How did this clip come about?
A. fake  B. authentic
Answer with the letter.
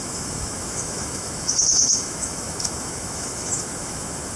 A